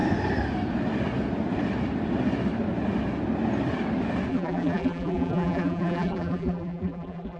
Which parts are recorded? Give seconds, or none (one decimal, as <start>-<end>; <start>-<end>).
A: 0.0-4.3